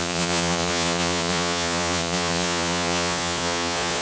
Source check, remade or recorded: remade